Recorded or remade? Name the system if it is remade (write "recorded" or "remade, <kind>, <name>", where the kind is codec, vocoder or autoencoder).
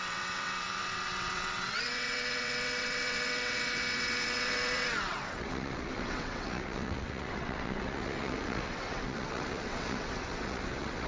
remade, vocoder, WaveNeXt